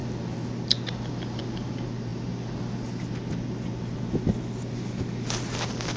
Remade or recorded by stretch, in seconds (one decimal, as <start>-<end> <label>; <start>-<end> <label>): 0.0-6.0 recorded